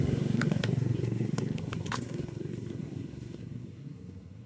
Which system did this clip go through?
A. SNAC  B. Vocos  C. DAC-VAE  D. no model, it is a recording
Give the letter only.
A